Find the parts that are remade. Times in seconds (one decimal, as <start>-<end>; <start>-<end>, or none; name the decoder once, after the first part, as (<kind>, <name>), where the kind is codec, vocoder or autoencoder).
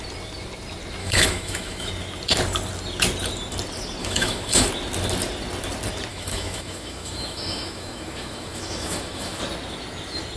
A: 1.0-1.9 (autoencoder, DAC-VAE); 4.0-4.7; 6.1-9.4